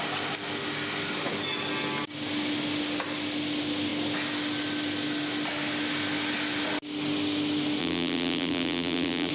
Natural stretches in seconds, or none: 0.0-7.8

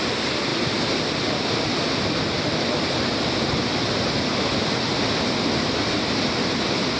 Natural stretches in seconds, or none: 0.0-7.0